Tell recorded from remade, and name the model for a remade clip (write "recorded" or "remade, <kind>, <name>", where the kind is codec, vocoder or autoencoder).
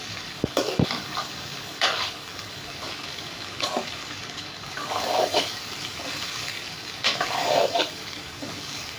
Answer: remade, codec, DAC